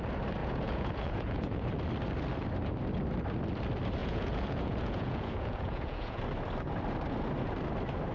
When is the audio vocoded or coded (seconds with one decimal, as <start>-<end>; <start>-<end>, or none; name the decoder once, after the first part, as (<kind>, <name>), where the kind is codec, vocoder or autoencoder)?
0.4-1.7 (vocoder, Vocos); 4.0-6.2